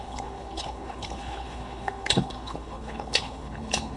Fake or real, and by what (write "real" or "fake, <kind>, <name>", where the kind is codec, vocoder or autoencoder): fake, codec, HILCodec